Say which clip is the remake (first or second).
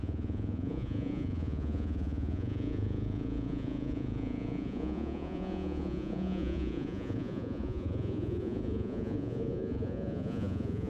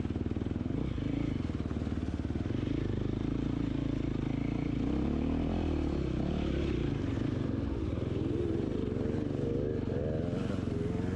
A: first